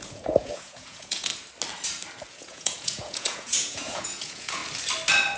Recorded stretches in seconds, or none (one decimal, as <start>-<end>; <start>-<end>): 1.3-2.3; 4.6-5.4